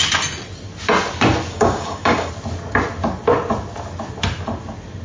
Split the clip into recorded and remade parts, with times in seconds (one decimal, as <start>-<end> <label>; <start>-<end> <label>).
0.0-1.5 recorded; 1.5-2.3 remade; 2.3-5.0 recorded